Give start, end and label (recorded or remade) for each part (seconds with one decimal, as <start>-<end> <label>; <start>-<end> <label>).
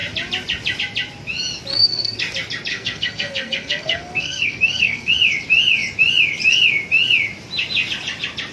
0.0-1.7 recorded; 1.7-2.2 remade; 2.2-2.7 recorded; 2.7-5.1 remade; 5.1-8.5 recorded